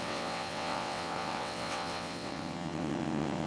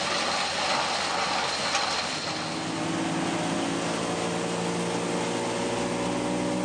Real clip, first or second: second